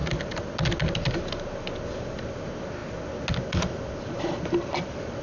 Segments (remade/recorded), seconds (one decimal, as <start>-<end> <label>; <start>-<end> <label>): 0.0-5.2 recorded